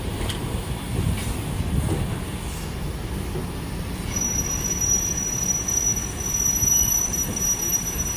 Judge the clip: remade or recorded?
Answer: recorded